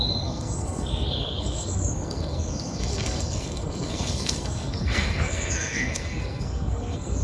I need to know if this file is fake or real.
fake